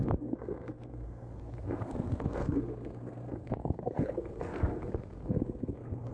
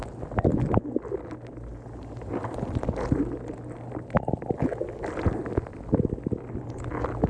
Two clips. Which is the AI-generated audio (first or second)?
first